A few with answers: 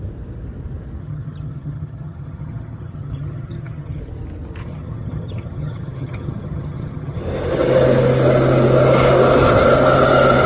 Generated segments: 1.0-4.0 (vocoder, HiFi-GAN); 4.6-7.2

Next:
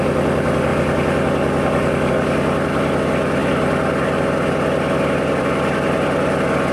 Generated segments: 3.4-5.4 (vocoder, BigVGAN v2)

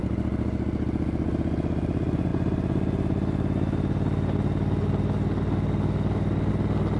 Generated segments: none

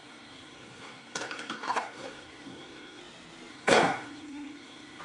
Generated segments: 0.0-3.0 (codec, SNAC); 3.5-5.0